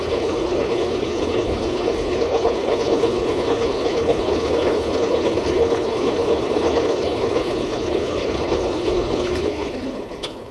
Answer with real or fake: fake